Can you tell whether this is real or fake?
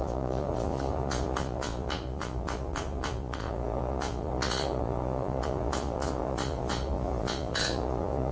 fake